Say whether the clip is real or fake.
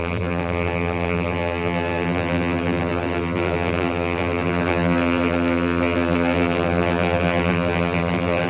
fake